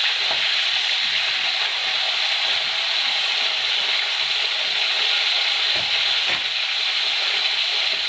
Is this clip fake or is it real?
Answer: real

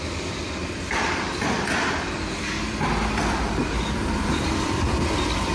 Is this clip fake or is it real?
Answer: fake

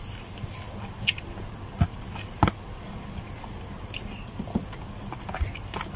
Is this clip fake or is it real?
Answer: real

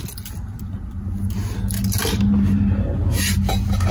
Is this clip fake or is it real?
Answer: real